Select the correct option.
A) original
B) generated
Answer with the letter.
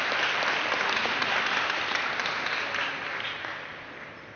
B